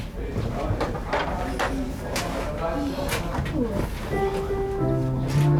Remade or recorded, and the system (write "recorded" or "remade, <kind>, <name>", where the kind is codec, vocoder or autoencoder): recorded